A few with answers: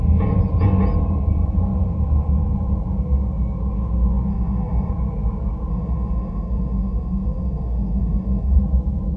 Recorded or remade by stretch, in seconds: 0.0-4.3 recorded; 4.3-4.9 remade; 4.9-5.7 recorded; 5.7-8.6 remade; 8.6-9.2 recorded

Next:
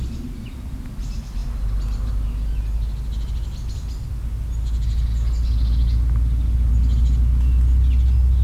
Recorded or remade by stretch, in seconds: 0.0-8.4 recorded

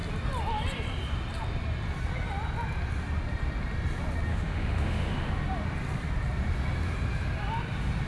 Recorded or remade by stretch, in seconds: 0.0-4.3 recorded; 4.3-5.3 remade; 5.3-8.1 recorded